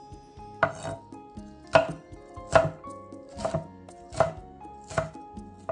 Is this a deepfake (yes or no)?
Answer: no